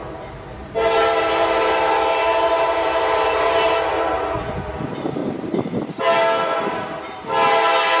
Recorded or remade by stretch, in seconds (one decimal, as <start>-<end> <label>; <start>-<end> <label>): 0.0-3.9 remade; 3.9-5.2 recorded; 5.2-6.0 remade; 6.0-8.0 recorded